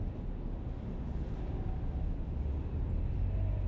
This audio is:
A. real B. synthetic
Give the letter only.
A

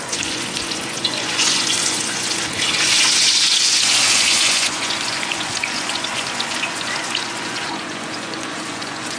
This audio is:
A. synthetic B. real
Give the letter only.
A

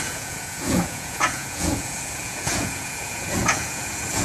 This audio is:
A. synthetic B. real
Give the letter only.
A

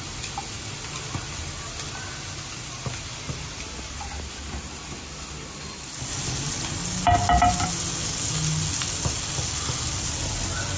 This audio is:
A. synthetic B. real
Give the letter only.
B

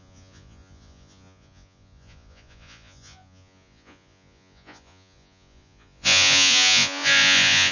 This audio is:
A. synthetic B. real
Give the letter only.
A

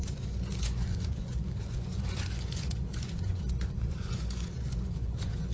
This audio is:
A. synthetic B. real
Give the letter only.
A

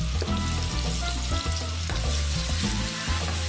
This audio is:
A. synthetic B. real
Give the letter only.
B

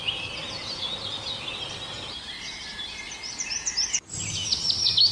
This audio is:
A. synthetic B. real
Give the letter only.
B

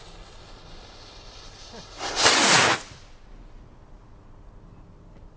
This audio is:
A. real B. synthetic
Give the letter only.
A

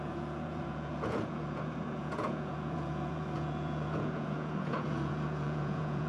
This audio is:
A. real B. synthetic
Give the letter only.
B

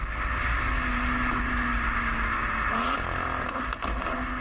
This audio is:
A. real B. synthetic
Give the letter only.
A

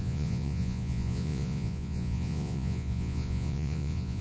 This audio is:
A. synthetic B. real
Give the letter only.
A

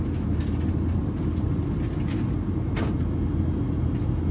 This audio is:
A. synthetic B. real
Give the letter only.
B